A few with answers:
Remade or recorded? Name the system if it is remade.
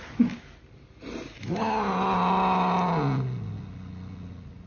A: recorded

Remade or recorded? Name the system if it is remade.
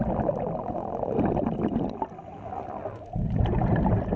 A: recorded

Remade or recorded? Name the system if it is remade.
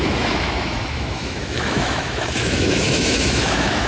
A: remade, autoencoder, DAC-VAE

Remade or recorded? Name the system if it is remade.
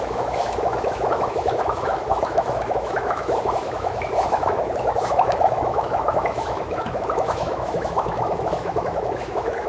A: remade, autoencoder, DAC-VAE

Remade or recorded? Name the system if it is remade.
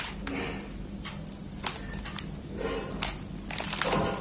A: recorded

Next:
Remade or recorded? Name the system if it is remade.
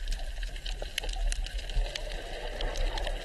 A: recorded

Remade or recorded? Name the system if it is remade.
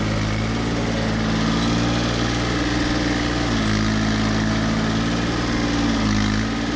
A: recorded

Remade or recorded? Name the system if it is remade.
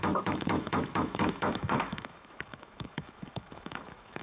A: remade, autoencoder, DAC-VAE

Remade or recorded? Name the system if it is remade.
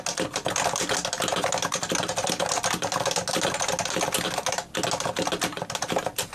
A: recorded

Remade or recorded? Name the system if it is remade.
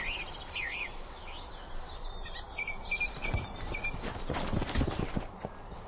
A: recorded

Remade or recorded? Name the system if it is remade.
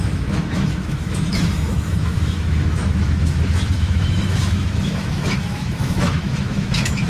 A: remade, autoencoder, DAC-VAE